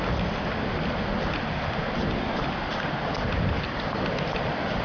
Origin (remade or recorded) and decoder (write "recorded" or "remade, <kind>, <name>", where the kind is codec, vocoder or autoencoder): recorded